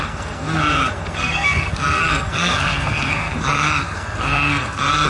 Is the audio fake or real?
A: fake